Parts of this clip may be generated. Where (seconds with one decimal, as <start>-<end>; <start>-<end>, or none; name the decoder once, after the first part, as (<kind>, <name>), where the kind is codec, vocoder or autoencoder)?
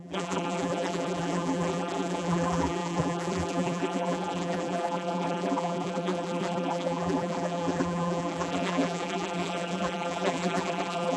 0.0-11.2 (vocoder, BigVGAN v2)